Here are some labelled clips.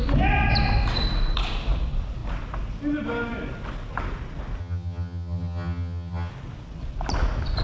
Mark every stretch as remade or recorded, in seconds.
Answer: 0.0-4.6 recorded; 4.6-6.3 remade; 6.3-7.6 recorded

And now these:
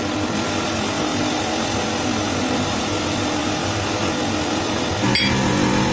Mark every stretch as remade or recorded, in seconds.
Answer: 0.0-5.9 recorded

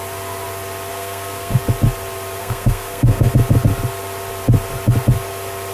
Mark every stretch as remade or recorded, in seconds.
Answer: 0.0-0.9 recorded; 0.9-1.6 remade; 1.6-2.4 recorded; 2.4-3.3 remade; 3.3-5.7 recorded

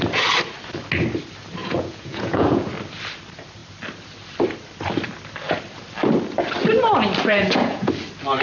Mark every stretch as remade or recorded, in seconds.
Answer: 0.0-1.6 recorded; 1.6-2.7 remade; 2.7-7.3 recorded; 7.3-7.9 remade; 7.9-8.4 recorded

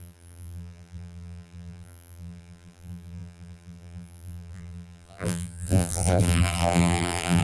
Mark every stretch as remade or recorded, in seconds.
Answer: 0.0-7.4 remade

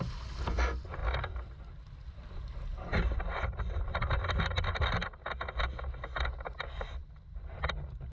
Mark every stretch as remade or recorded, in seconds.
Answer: 0.0-2.9 recorded; 2.9-3.6 remade; 3.6-8.1 recorded

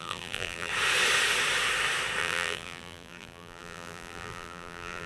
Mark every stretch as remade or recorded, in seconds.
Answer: 0.0-0.7 remade; 0.7-2.2 recorded; 2.2-5.1 remade